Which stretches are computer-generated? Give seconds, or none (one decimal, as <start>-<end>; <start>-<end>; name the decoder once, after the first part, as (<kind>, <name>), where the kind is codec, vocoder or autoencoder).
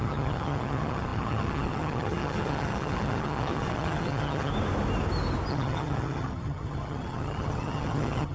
0.0-4.5 (vocoder, HiFi-GAN); 5.5-8.3